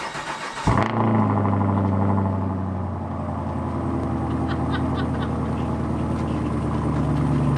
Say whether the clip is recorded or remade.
recorded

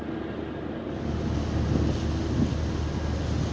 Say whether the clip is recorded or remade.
recorded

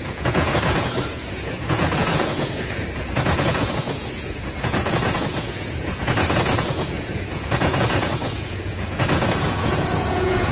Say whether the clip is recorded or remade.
remade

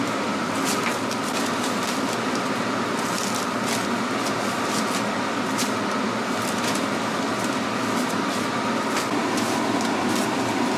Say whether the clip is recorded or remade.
recorded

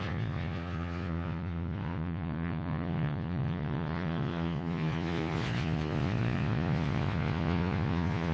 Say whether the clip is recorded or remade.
remade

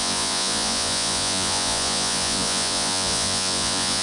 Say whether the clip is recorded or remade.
remade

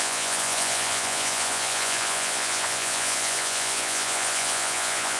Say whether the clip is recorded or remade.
remade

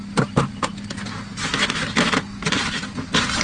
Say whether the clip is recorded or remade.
recorded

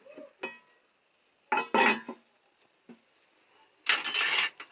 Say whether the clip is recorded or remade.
recorded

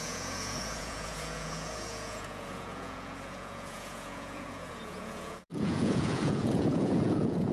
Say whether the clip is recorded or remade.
remade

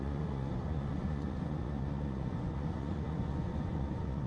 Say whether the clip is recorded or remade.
remade